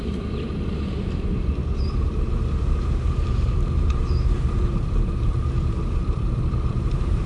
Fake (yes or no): yes